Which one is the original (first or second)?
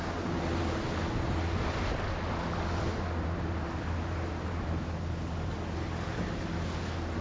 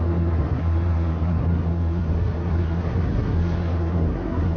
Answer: first